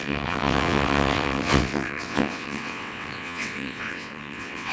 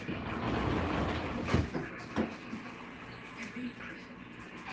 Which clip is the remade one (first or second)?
first